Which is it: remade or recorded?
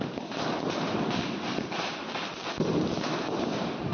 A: recorded